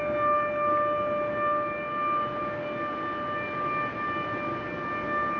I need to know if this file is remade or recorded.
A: recorded